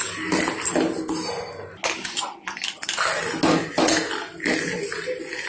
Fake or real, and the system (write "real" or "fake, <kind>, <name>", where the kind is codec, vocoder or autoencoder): real